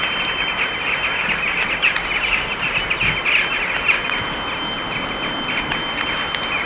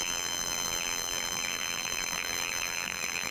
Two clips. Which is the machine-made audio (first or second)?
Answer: second